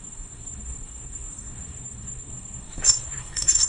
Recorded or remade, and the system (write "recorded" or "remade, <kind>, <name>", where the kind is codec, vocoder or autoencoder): remade, codec, SNAC